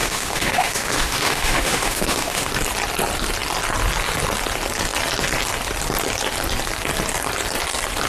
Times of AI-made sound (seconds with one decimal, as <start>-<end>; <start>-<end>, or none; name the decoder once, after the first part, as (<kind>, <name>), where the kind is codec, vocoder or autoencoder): 0.0-2.5 (autoencoder, DAC-VAE)